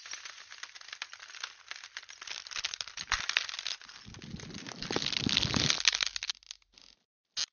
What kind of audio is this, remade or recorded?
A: recorded